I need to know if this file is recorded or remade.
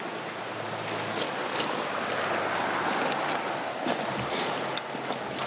recorded